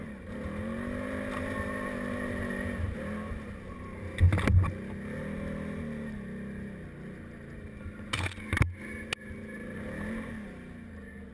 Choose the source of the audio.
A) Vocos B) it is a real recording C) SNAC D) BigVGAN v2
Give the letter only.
B